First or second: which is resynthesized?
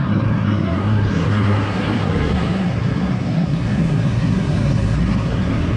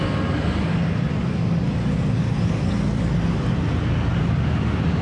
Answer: first